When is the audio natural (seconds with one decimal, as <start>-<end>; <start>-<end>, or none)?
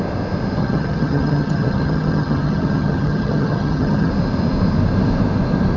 0.0-0.6; 4.1-5.8